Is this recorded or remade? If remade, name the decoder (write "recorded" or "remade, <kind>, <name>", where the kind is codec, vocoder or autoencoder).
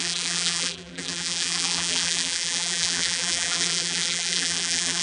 remade, vocoder, BigVGAN v2